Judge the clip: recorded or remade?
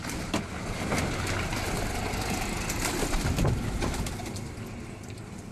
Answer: recorded